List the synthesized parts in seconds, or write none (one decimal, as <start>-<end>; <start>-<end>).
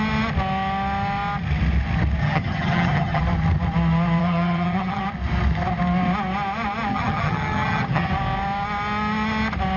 2.2-3.2; 4.2-5.0; 6.9-8.1